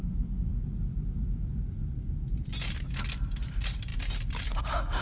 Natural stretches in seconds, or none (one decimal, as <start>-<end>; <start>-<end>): 0.0-5.0